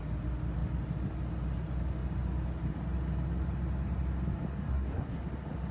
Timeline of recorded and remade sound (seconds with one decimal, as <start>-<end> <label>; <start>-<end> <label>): 0.0-4.6 recorded; 4.6-5.2 remade; 5.2-5.7 recorded